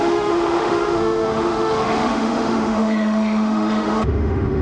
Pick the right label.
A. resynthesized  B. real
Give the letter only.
A